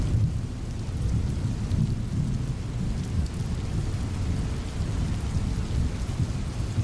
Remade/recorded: recorded